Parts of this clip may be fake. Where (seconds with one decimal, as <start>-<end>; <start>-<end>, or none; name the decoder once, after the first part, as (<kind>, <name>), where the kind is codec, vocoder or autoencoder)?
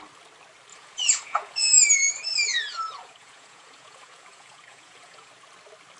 0.7-1.8 (vocoder, Vocos); 2.5-5.3